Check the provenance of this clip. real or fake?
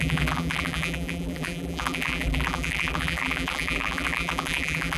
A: fake